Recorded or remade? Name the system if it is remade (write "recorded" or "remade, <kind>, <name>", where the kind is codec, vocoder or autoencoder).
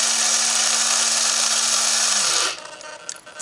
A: recorded